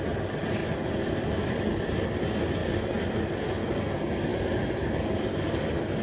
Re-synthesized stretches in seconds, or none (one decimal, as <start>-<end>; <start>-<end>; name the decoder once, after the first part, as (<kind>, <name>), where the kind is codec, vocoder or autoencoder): 0.6-1.9 (vocoder, BigVGAN v2); 4.3-4.9